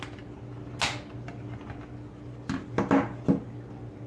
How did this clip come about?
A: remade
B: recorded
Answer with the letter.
B